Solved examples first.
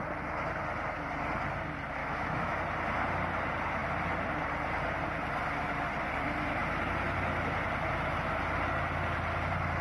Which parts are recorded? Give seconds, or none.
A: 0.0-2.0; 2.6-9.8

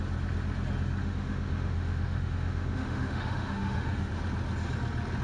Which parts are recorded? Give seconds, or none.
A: 0.0-1.0; 4.1-5.2